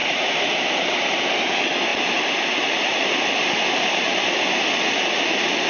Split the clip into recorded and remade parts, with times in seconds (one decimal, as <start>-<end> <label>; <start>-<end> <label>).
0.0-0.5 remade; 0.5-1.9 recorded; 1.9-4.4 remade; 4.4-5.7 recorded